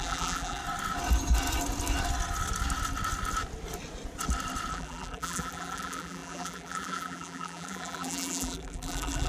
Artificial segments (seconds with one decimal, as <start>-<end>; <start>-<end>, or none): 0.0-0.6; 4.7-9.3